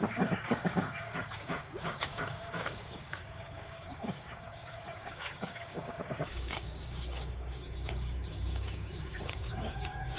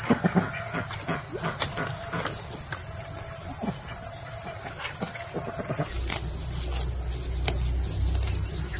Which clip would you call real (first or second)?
second